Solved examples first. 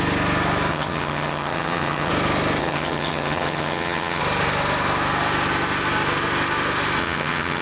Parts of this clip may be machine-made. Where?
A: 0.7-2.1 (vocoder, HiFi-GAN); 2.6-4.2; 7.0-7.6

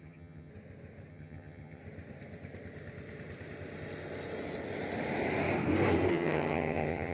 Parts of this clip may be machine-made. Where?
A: 0.0-0.5 (vocoder, HiFi-GAN); 1.1-1.8; 6.1-7.1